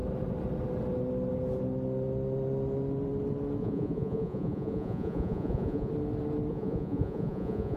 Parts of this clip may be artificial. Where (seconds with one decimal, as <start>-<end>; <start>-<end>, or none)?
3.6-5.9; 6.5-7.8